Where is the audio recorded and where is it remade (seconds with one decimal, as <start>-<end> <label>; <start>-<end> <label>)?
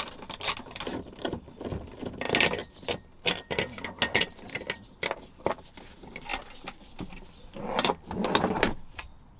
0.0-6.3 recorded; 6.3-7.5 remade; 7.5-8.2 recorded; 8.2-8.7 remade; 8.7-9.4 recorded